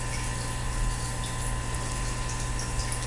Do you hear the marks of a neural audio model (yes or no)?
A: no